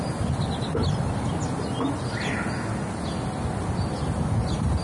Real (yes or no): yes